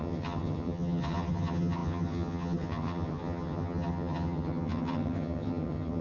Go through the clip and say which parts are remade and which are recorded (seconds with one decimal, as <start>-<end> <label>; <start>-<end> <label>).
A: 0.0-6.0 remade